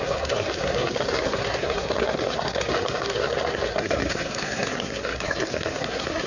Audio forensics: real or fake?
fake